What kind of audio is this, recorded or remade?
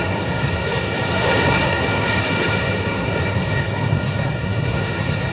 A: remade